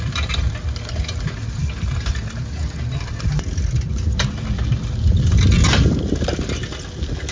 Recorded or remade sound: recorded